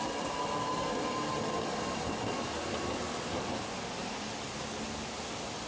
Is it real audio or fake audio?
real